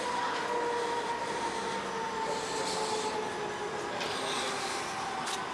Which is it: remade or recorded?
recorded